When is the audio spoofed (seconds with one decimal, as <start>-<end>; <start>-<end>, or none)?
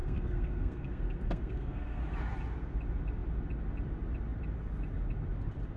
0.0-2.0